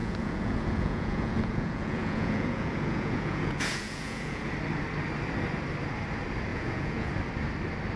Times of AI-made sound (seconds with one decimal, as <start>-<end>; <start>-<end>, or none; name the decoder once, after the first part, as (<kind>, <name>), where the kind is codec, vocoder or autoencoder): 0.0-4.5 (vocoder, Vocos); 6.5-7.1